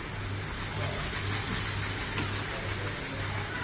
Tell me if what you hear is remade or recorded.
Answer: recorded